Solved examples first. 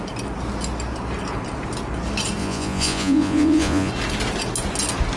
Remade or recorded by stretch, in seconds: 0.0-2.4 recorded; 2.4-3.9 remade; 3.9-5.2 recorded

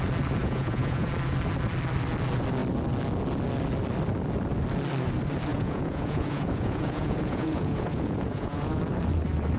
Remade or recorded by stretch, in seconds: 0.0-0.4 recorded; 0.4-1.1 remade; 1.1-5.5 recorded; 5.5-8.8 remade; 8.8-9.6 recorded

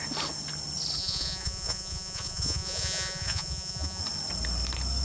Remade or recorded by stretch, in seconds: 0.0-1.0 recorded; 1.0-4.0 remade; 4.0-5.0 recorded

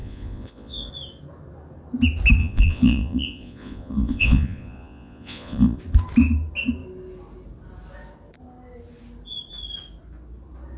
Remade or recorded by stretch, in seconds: 0.0-0.9 remade; 0.9-2.4 recorded; 2.4-5.8 remade; 5.8-10.8 recorded

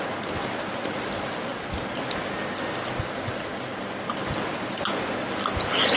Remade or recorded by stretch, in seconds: 0.0-6.0 recorded

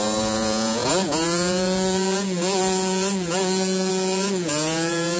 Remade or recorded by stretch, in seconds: 0.0-5.2 remade

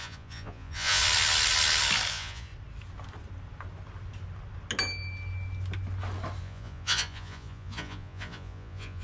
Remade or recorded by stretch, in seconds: 0.0-1.0 remade; 1.0-2.1 recorded; 2.1-2.5 remade; 2.5-6.4 recorded; 6.4-9.0 remade